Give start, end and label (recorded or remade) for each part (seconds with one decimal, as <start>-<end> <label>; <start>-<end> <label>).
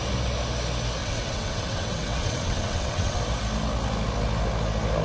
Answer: 0.0-1.0 recorded; 1.0-3.2 remade; 3.2-5.0 recorded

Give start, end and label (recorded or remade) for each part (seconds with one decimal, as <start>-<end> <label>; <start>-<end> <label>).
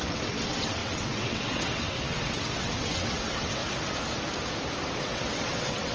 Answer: 0.0-3.6 remade; 3.6-4.9 recorded; 4.9-5.9 remade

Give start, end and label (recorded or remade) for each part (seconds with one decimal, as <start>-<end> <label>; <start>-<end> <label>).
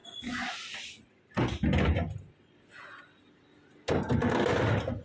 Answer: 0.0-5.0 recorded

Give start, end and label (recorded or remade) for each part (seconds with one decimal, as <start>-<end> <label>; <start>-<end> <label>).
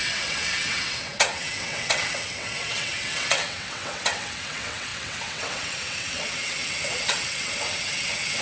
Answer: 0.0-8.4 remade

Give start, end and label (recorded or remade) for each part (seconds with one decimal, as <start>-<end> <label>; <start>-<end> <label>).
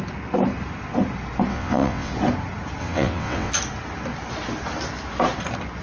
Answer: 0.0-1.5 recorded; 1.5-2.1 remade; 2.1-2.8 recorded; 2.8-3.5 remade; 3.5-5.8 recorded